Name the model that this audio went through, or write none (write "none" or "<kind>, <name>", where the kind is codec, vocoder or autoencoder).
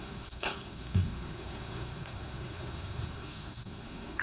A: codec, SNAC